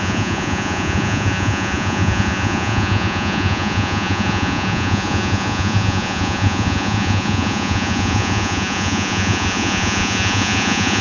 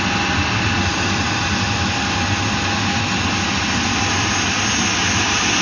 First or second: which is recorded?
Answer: second